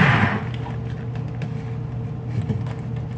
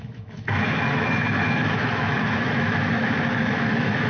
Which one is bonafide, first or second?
first